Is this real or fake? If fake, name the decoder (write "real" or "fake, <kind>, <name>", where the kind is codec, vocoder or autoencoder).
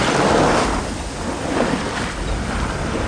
real